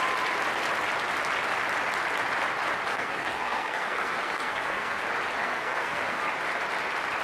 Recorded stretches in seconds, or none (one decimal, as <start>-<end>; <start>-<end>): 0.0-2.9; 5.0-5.4; 6.2-7.2